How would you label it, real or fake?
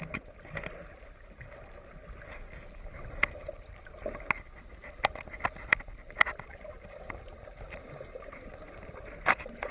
real